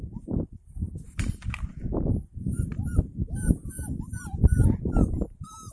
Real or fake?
fake